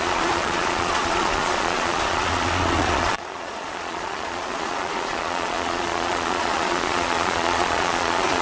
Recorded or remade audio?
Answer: remade